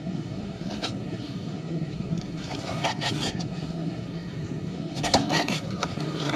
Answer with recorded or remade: remade